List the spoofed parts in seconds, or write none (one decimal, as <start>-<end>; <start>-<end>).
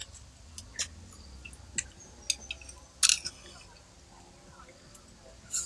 none